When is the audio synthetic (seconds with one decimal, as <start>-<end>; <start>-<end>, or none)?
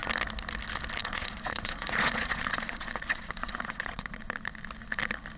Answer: 1.0-4.2